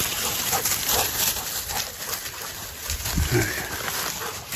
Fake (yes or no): no